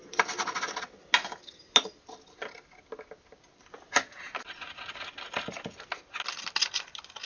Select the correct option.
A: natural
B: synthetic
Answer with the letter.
A